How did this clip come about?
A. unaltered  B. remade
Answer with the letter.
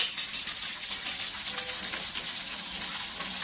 A